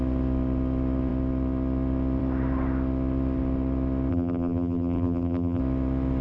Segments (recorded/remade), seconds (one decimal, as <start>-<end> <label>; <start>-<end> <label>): 0.0-4.1 recorded; 4.1-5.6 remade; 5.6-6.2 recorded